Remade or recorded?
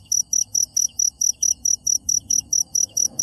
remade